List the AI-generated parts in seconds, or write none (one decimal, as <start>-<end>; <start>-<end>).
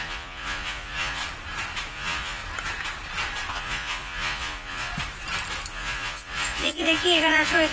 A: 0.0-1.2; 1.9-2.4; 3.5-4.9; 5.7-7.7